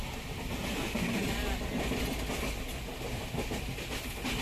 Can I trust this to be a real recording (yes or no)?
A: yes